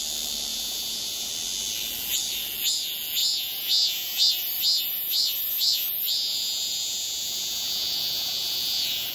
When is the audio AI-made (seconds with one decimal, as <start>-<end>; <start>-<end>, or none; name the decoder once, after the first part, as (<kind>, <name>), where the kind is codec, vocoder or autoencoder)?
0.5-1.3 (vocoder, Vocos); 3.2-4.3; 4.9-9.1